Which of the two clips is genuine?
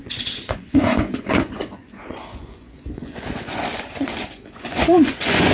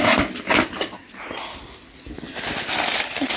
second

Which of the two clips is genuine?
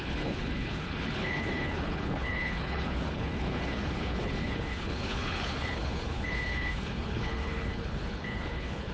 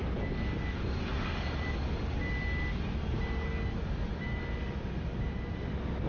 second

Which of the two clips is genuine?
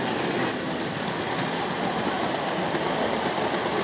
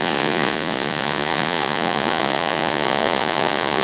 first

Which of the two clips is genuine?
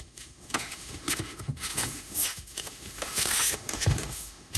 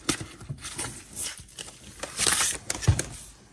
second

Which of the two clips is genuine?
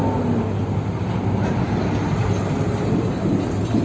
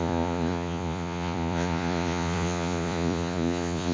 first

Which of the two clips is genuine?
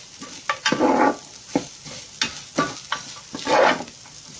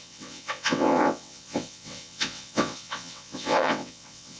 first